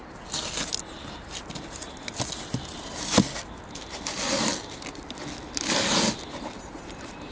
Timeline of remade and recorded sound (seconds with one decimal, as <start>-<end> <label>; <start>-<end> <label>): 0.0-7.3 recorded